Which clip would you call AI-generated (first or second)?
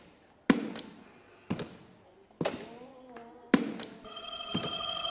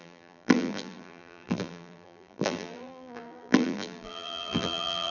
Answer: second